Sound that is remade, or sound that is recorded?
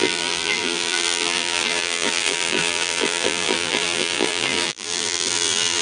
remade